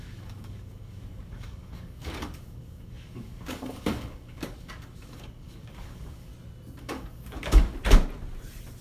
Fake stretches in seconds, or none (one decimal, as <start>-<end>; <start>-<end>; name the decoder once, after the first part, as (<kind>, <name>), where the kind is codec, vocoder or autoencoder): 0.0-6.3 (codec, DAC); 6.8-7.7